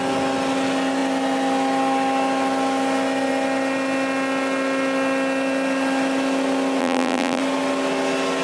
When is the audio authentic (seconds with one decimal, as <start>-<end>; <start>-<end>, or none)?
0.0-6.8; 7.4-8.4